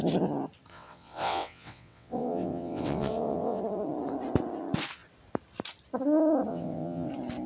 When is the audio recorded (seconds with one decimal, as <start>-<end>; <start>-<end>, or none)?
0.0-0.7; 3.6-6.5; 7.1-7.5